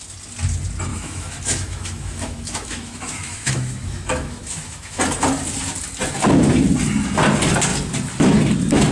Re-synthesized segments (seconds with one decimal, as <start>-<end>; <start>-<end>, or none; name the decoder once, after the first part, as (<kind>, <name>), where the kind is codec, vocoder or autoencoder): 0.9-5.0 (autoencoder, DAC-VAE)